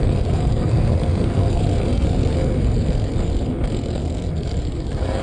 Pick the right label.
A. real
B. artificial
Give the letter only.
B